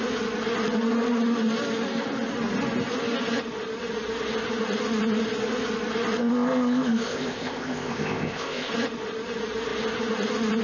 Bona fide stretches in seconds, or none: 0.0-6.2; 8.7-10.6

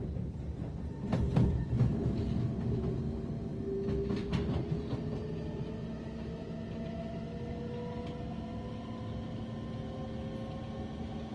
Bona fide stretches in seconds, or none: 0.0-11.3